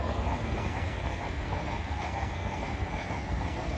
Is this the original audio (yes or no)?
no